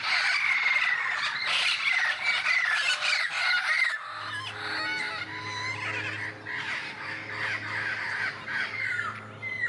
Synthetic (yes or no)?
no